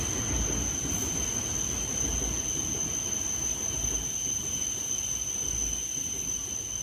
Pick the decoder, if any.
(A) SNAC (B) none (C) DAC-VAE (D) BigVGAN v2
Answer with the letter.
B